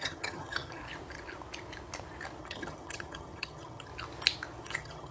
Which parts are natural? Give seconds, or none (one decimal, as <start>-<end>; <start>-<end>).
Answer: 0.8-2.4; 3.9-4.6